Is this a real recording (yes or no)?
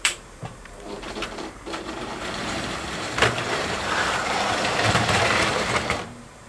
no